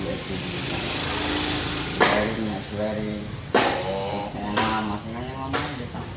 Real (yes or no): no